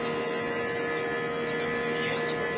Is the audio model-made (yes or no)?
no